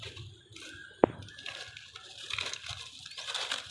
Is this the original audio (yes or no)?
yes